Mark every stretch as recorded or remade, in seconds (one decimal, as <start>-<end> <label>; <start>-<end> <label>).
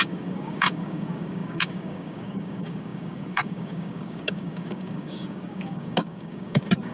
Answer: 0.0-6.9 remade